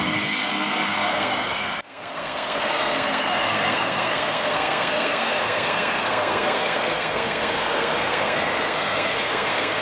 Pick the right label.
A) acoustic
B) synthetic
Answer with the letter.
B